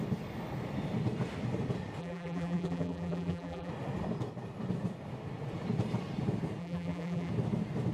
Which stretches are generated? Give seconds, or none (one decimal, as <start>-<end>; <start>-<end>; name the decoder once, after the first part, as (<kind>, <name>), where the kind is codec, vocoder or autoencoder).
2.0-3.7 (vocoder, BigVGAN v2); 6.6-7.3